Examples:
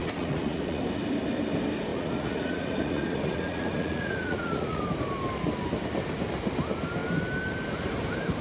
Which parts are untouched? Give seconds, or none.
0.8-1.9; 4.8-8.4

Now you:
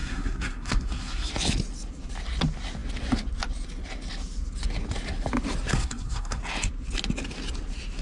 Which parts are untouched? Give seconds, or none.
1.3-5.7; 6.4-8.0

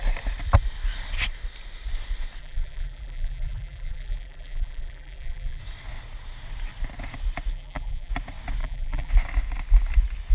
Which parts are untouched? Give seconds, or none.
0.0-2.4; 5.6-7.5; 8.1-8.6; 9.1-10.3

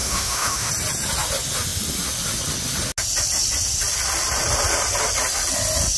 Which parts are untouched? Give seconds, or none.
0.7-6.0

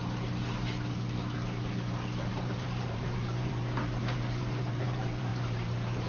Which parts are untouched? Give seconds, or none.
0.0-2.3

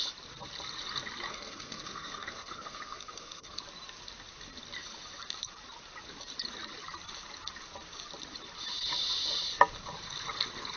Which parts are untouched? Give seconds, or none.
0.0-1.3; 3.6-10.8

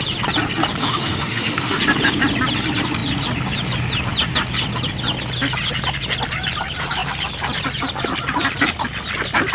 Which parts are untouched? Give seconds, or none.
0.0-0.8; 1.8-9.5